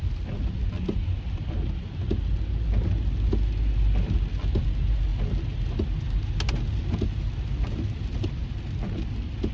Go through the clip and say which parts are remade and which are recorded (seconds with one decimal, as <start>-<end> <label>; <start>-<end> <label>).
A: 0.0-9.5 recorded